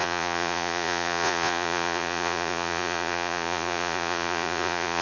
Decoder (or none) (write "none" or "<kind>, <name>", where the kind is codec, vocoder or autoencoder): vocoder, Vocos